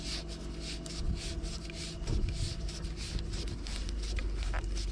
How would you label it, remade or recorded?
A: recorded